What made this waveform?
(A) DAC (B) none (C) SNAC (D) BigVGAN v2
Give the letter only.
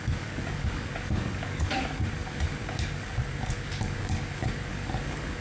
A